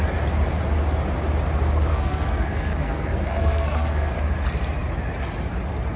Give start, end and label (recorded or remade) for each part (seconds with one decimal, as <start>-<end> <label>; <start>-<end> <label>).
0.0-1.9 recorded; 1.9-4.1 remade; 4.1-6.0 recorded